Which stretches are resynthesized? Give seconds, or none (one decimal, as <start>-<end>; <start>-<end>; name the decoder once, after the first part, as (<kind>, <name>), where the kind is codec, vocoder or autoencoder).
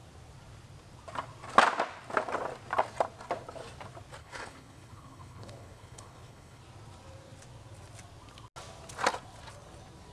4.2-6.6 (codec, HILCodec)